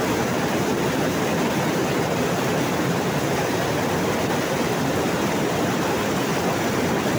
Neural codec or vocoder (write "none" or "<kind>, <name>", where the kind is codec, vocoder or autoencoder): none